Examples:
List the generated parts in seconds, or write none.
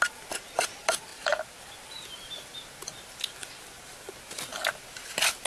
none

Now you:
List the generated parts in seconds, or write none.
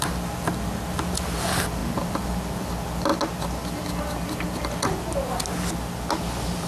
none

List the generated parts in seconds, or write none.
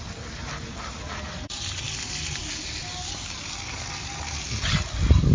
none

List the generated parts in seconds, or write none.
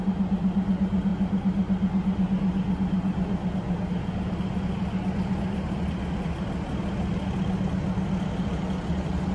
none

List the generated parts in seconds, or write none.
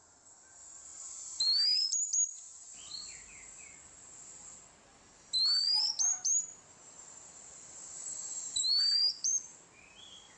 0.9-3.8 (vocoder, BigVGAN v2); 5.6-9.3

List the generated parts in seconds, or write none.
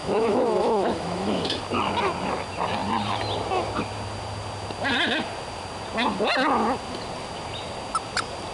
0.0-1.6 (autoencoder, DAC-VAE)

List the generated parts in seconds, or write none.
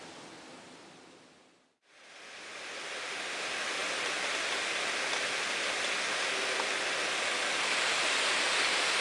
none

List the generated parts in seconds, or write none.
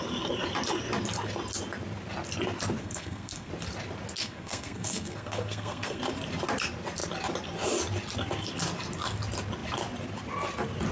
2.8-3.5 (codec, SNAC); 4.2-6.0